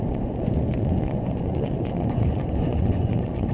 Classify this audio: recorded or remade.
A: remade